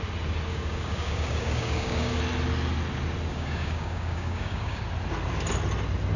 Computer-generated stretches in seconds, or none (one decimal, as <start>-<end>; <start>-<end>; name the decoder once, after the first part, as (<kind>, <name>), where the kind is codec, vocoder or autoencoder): 0.5-2.2 (codec, DAC); 3.3-4.8